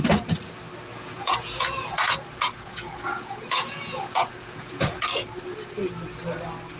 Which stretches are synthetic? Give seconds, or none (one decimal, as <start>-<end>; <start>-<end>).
0.9-5.0

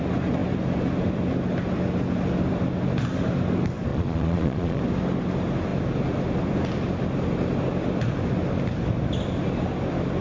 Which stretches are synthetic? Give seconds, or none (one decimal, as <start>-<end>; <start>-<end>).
3.9-4.8

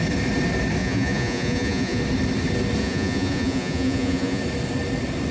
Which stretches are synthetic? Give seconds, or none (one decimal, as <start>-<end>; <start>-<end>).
0.8-2.0; 2.8-4.4